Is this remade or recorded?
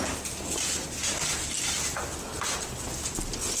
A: recorded